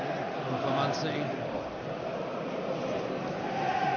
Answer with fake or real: real